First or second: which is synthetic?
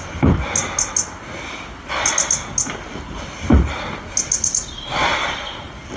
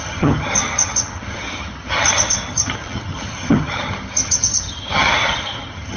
second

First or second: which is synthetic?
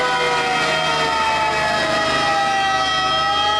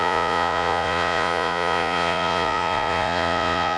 second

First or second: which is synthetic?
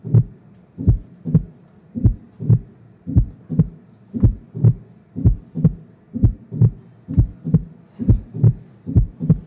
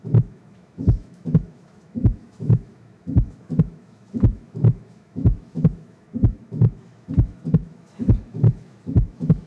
second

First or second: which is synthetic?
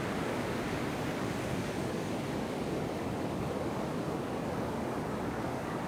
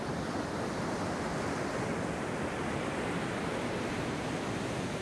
first